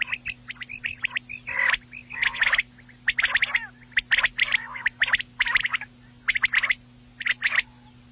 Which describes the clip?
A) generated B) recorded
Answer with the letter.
B